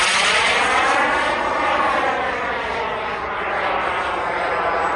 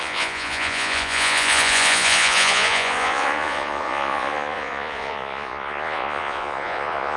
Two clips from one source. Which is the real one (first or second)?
first